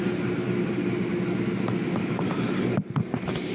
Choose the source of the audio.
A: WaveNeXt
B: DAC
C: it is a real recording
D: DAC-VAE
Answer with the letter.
C